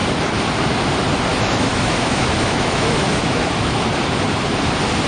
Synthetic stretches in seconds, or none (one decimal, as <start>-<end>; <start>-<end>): 1.3-3.8